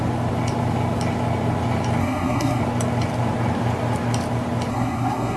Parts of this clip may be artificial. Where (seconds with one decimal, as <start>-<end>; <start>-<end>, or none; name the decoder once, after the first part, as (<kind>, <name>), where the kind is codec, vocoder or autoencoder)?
2.0-2.6 (codec, SNAC); 4.7-5.4